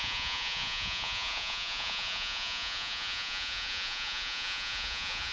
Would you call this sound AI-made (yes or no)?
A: yes